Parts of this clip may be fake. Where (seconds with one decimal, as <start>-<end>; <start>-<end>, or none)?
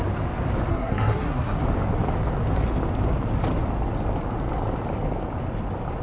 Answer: 0.7-1.6